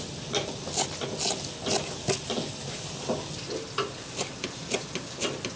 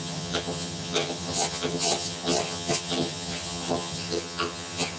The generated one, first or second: second